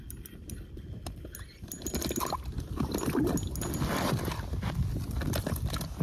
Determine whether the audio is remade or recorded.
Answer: recorded